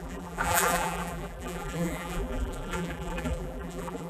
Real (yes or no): no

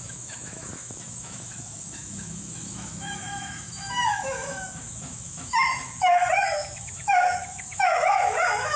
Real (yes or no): no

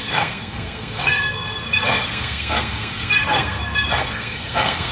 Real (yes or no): no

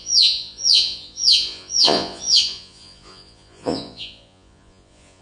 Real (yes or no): no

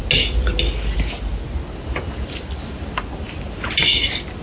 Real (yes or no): yes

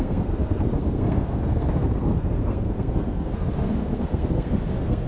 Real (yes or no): no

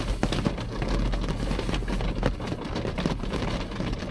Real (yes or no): yes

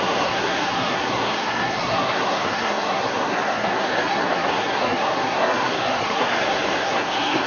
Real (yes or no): no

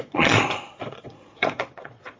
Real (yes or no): no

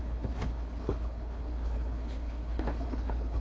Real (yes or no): no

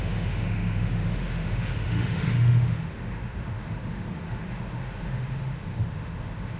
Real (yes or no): no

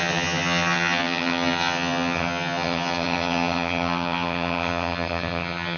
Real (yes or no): no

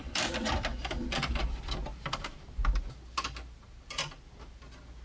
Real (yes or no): yes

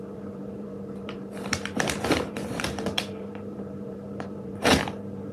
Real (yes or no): no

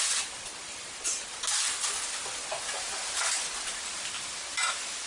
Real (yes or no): yes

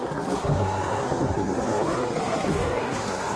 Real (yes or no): no